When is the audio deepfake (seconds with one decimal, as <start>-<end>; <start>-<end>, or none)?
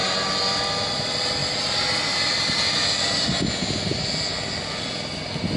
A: none